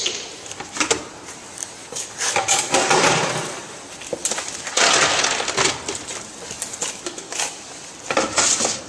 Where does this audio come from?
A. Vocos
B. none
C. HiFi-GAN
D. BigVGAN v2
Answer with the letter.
B